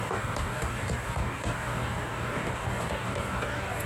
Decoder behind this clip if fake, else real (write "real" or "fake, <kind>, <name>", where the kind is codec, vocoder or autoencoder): fake, codec, DAC